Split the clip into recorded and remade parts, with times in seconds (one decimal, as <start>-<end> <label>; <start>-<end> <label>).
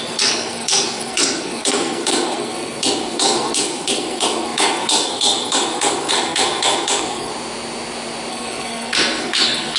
0.0-7.3 remade; 7.3-8.3 recorded; 8.3-9.8 remade